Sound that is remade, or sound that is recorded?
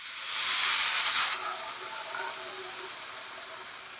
recorded